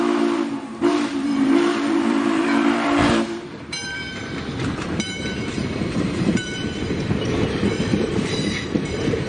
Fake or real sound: fake